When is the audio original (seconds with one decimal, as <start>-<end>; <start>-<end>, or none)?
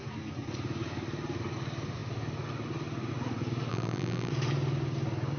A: 0.0-3.7; 4.3-5.4